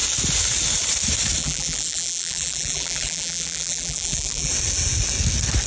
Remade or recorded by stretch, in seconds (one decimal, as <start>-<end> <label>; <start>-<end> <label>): 0.0-1.4 recorded; 1.4-4.5 remade; 4.5-5.7 recorded